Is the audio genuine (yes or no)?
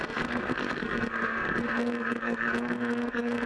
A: no